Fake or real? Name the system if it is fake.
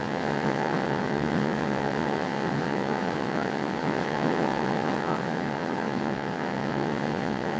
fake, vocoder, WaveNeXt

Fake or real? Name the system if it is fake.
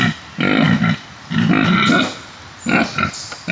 real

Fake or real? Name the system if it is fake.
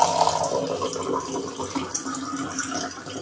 fake, vocoder, BigVGAN v2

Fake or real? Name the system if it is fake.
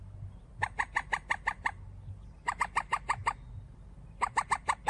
real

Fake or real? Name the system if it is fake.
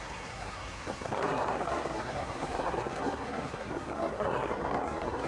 fake, codec, SNAC